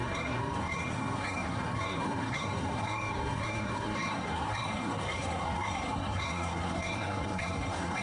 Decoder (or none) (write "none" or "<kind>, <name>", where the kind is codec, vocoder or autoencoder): codec, SNAC